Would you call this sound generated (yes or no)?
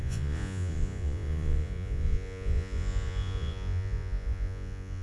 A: yes